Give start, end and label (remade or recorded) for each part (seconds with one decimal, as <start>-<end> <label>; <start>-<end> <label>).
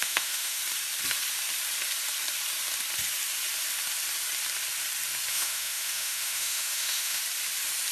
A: 0.0-0.6 remade; 0.6-5.3 recorded; 5.3-7.2 remade; 7.2-7.9 recorded